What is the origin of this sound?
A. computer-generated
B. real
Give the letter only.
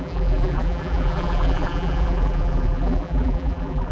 A